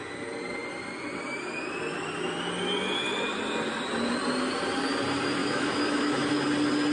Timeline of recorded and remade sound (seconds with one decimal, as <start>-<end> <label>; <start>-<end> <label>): 0.0-5.4 recorded; 5.4-6.3 remade; 6.3-6.9 recorded